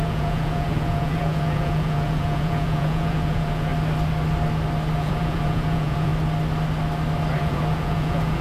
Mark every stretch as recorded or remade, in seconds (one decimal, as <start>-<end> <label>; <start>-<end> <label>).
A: 0.0-3.7 remade; 3.7-5.0 recorded; 5.0-6.1 remade; 6.1-7.4 recorded; 7.4-8.4 remade